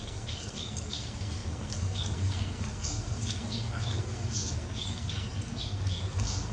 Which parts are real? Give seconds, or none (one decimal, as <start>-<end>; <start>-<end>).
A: none